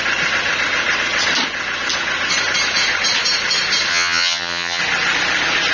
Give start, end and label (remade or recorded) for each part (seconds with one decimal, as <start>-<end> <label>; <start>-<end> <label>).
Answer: 0.0-3.9 recorded; 3.9-4.8 remade; 4.8-5.7 recorded